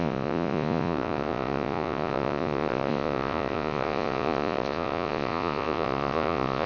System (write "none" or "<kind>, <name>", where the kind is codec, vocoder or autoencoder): vocoder, Vocos